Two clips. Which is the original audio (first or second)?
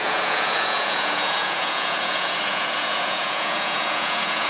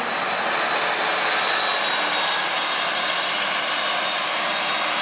second